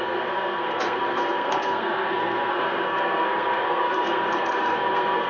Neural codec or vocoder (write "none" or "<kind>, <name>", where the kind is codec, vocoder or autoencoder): codec, SNAC